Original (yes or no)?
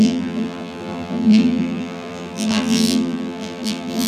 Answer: no